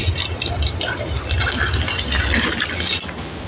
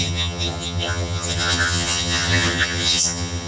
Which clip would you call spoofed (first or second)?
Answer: second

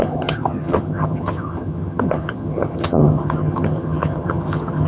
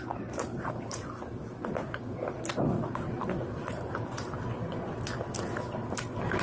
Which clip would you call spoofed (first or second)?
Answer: first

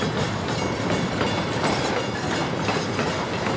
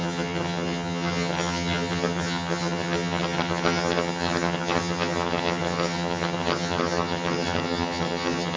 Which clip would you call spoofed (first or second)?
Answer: second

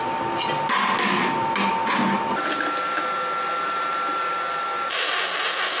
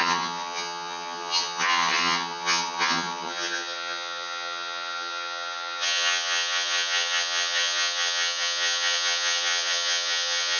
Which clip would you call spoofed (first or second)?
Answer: second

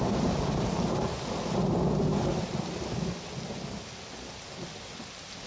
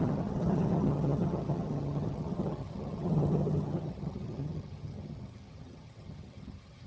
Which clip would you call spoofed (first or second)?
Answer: second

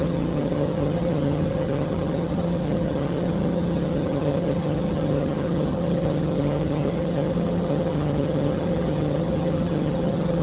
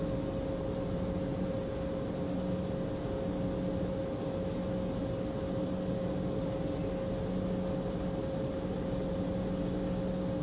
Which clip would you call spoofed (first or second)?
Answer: first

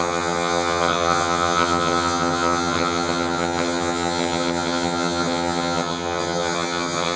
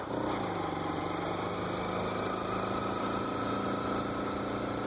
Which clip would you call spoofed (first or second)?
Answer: first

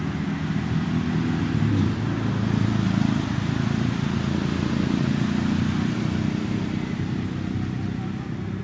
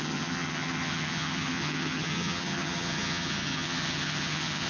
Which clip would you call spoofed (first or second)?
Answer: second